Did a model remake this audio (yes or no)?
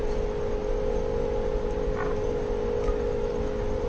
no